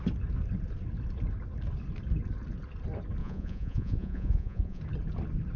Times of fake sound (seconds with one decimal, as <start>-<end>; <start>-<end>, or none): 3.2-4.8